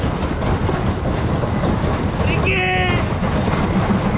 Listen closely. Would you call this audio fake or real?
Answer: real